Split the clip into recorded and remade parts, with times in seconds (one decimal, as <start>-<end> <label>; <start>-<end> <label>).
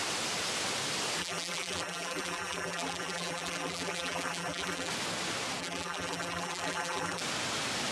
0.0-1.2 recorded; 1.2-4.9 remade; 4.9-5.6 recorded; 5.6-7.2 remade; 7.2-7.9 recorded